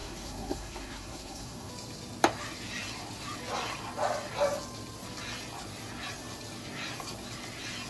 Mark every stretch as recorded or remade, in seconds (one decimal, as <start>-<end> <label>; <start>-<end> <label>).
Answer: 0.0-1.7 remade; 1.7-7.9 recorded